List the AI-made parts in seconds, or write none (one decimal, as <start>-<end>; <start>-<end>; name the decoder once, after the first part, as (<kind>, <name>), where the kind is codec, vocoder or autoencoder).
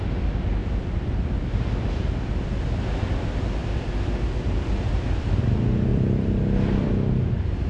3.6-5.2 (vocoder, BigVGAN v2); 5.9-6.9